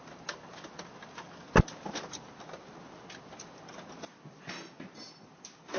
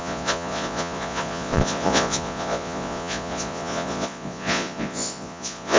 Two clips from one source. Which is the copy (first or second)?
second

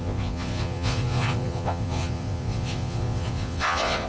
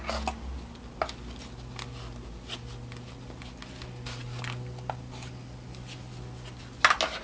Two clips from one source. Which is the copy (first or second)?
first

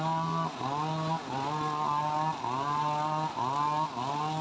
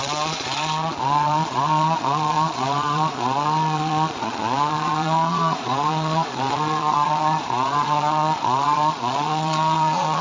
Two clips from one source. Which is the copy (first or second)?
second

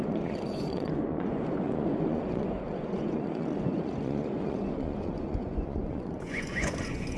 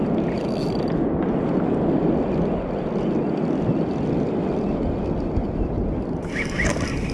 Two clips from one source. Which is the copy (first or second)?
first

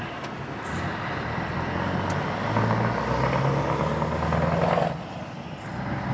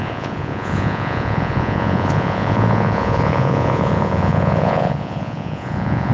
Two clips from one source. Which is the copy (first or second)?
second